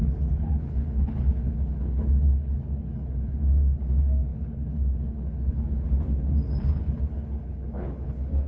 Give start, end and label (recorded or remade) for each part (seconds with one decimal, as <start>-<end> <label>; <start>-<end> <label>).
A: 0.0-8.5 remade